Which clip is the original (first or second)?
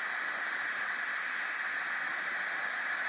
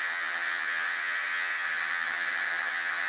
first